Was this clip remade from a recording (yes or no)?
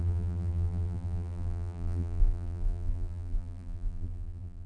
yes